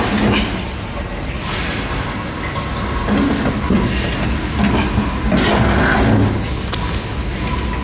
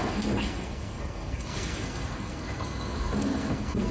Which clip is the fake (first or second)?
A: second